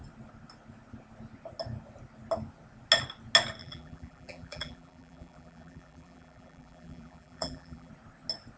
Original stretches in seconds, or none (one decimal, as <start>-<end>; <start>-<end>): 0.0-3.6; 7.9-8.6